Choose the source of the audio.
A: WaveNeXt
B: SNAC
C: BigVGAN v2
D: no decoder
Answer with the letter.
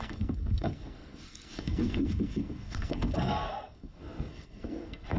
B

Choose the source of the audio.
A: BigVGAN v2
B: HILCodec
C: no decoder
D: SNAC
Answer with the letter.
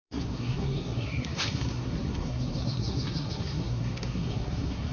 D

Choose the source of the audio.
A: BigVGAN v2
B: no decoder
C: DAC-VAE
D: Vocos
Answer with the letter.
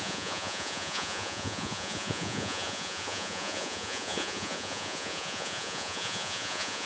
D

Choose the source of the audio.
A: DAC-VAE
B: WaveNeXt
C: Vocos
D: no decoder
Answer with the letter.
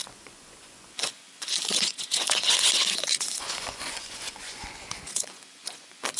C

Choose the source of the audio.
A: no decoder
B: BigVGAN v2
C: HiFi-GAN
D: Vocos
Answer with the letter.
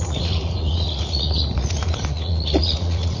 D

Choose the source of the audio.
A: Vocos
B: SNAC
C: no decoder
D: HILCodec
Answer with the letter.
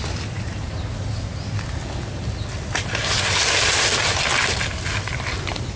C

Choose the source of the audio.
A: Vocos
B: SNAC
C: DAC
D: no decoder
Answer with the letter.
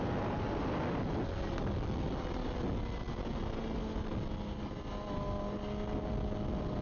D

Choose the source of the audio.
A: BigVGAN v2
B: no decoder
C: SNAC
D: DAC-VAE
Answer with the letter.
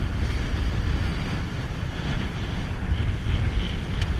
B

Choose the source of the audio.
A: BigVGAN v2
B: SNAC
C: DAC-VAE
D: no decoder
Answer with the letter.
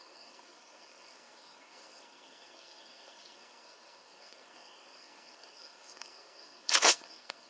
B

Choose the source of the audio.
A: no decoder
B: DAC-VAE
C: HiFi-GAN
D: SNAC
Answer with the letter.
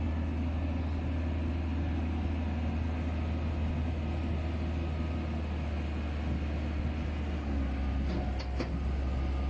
A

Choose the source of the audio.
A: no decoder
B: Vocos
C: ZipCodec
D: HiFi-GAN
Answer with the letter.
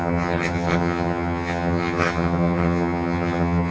D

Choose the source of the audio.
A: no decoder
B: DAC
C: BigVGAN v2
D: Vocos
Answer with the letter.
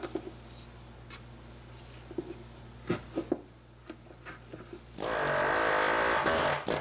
A